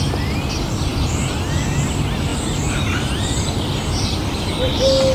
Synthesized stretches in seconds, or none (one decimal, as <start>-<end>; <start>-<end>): none